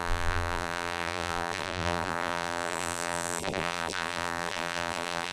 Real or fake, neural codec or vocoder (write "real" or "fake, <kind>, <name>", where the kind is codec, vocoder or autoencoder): fake, vocoder, BigVGAN v2